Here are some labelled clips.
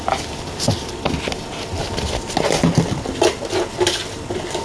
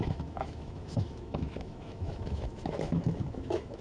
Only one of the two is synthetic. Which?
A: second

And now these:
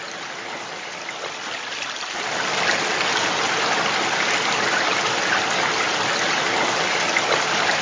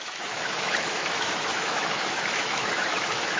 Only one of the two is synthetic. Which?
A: second